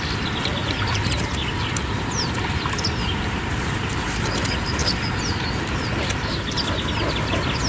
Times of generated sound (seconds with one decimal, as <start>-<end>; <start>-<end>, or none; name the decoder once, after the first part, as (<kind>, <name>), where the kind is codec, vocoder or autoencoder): 0.6-1.3 (vocoder, BigVGAN v2); 3.0-3.5